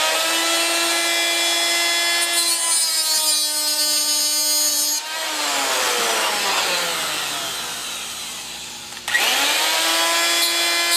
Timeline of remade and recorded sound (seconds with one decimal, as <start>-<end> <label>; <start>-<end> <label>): 0.0-7.8 recorded; 7.8-9.0 remade; 9.0-11.0 recorded